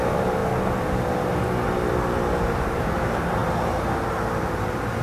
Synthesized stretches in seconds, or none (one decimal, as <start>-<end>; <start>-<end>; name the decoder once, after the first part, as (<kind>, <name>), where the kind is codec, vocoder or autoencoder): 0.0-0.4 (vocoder, BigVGAN v2); 2.3-3.4